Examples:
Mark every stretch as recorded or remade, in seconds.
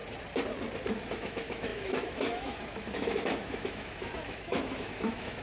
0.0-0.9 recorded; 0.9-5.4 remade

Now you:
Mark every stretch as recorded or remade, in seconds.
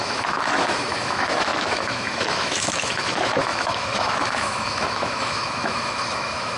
0.0-6.6 remade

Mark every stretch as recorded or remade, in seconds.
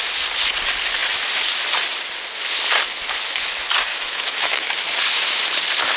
0.0-3.9 recorded; 3.9-4.7 remade; 4.7-6.0 recorded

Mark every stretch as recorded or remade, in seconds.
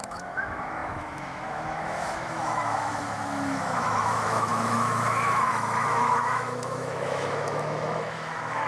0.0-8.7 remade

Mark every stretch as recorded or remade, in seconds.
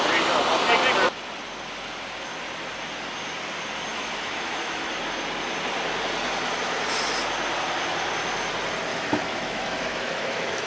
0.0-3.9 recorded; 3.9-4.9 remade; 4.9-8.9 recorded; 8.9-10.7 remade